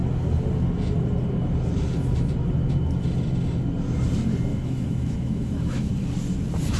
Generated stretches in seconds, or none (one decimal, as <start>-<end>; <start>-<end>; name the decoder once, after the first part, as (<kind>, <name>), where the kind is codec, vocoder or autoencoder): 4.5-5.9 (autoencoder, DAC-VAE)